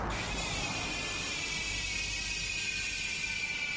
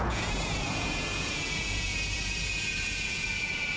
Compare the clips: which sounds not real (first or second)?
second